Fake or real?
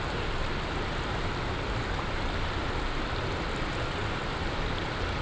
real